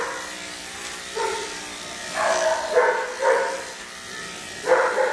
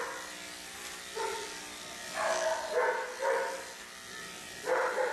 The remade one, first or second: first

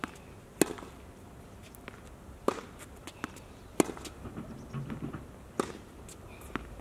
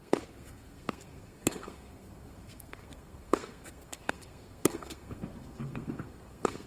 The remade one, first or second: second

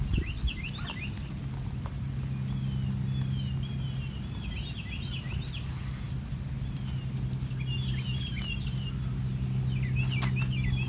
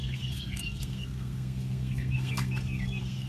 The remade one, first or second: second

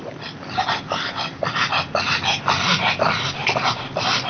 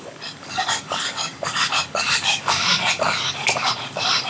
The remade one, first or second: second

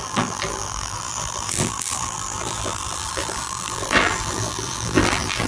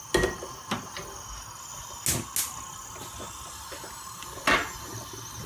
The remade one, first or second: first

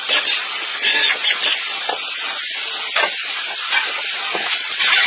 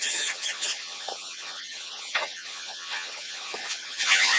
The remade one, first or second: second